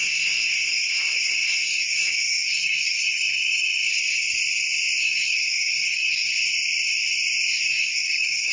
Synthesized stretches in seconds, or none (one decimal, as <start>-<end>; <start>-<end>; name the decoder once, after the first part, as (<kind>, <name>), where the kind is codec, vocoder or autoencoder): 0.0-3.9 (codec, SNAC); 5.0-6.3; 7.7-8.5